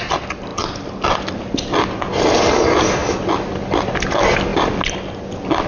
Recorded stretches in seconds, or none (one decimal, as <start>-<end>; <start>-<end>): 0.0-5.7